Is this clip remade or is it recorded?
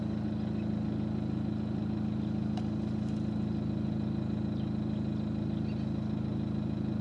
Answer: recorded